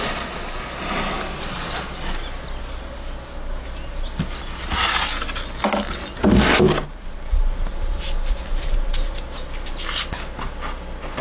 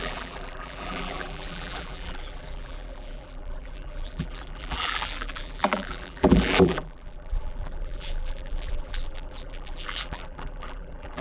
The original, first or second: first